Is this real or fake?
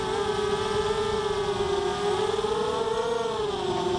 real